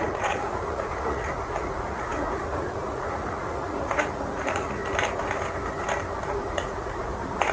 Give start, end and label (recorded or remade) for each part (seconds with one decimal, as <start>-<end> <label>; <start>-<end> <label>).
0.0-4.8 remade; 4.8-6.3 recorded; 6.3-7.5 remade